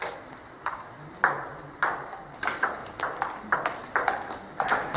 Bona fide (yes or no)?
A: yes